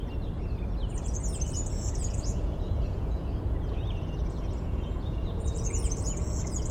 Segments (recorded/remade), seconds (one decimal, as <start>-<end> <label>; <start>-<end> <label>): 0.0-1.7 recorded; 1.7-6.7 remade